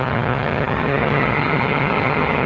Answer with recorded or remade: remade